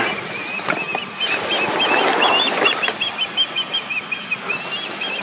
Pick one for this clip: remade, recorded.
recorded